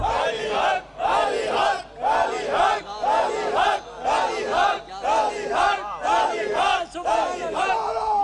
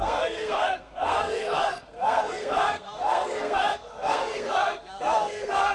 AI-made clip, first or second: second